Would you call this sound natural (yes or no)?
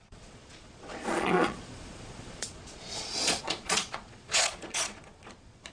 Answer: no